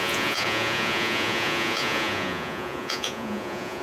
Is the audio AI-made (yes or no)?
yes